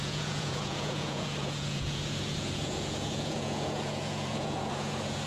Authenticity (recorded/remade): remade